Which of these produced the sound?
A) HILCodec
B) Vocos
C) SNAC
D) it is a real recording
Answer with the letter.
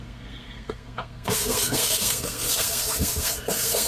C